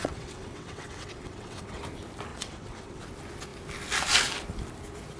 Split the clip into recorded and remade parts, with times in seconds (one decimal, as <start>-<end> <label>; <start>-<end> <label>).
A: 0.0-1.8 remade; 1.8-2.3 recorded; 2.3-3.0 remade; 3.0-5.2 recorded